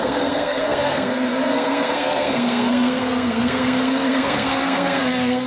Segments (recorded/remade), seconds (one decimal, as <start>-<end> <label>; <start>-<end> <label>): 0.0-5.5 remade